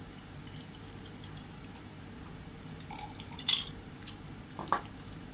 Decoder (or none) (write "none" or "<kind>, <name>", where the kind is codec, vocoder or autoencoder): vocoder, BigVGAN v2